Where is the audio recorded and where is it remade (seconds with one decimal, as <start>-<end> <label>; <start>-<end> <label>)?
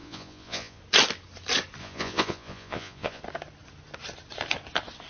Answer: 0.0-0.8 remade; 0.8-1.8 recorded; 1.8-3.2 remade; 3.2-5.1 recorded